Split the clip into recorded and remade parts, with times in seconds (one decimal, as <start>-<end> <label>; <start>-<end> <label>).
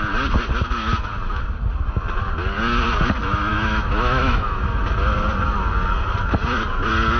0.0-3.5 recorded; 3.5-4.8 remade; 4.8-7.2 recorded